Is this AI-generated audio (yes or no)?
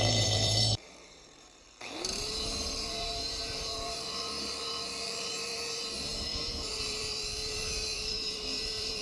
yes